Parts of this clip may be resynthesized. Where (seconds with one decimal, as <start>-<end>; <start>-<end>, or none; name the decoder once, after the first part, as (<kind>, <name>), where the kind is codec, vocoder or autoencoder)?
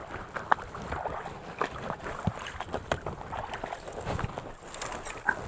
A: none